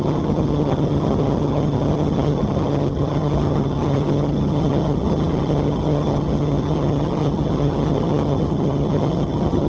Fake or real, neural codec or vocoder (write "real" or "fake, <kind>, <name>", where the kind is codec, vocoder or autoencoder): fake, vocoder, HiFi-GAN